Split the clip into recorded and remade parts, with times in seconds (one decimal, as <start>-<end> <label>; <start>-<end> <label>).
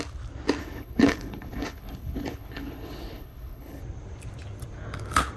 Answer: 0.0-0.6 recorded; 0.6-3.8 remade; 3.8-5.4 recorded